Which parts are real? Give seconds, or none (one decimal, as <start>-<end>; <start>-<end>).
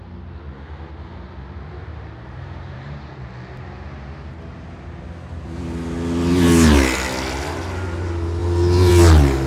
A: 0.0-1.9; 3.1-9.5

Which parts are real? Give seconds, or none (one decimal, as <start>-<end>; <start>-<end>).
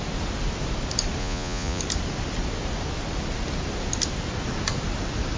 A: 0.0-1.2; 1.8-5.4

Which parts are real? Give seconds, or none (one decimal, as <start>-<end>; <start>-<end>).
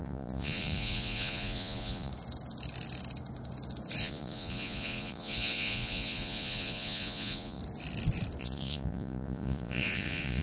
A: 2.1-4.0; 7.6-8.4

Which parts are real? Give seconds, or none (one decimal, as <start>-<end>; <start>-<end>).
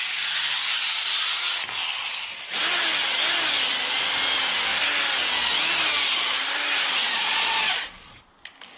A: 0.0-7.0; 8.2-8.8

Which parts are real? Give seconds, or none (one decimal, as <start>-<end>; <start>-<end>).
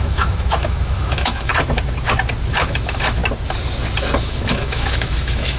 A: 1.5-2.5; 3.2-4.2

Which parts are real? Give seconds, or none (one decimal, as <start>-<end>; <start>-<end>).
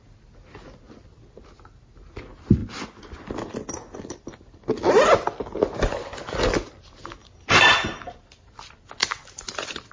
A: 0.0-7.2; 8.5-9.9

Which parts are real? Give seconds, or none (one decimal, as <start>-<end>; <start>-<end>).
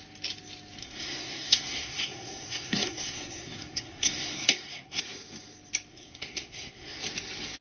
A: 0.0-0.8; 5.0-5.9; 7.0-7.6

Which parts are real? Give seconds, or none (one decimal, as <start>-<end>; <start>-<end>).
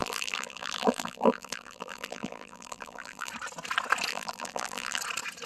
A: 3.3-4.1; 5.0-5.5